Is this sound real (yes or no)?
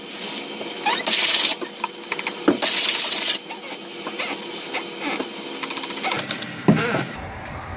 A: yes